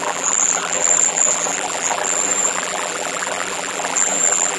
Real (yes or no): no